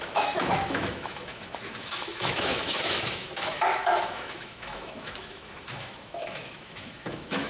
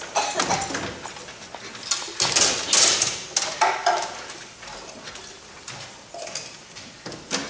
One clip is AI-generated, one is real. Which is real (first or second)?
second